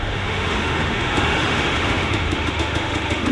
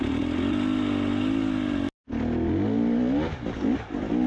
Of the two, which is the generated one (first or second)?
first